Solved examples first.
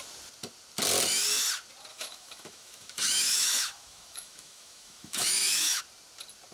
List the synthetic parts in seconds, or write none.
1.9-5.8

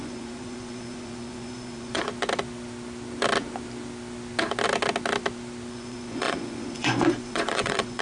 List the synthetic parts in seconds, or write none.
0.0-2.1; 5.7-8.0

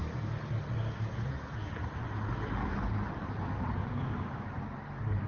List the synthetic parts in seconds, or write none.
3.8-4.5